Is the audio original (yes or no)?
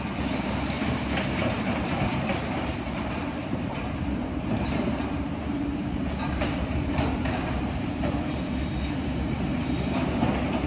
no